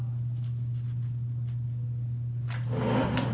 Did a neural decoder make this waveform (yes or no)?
no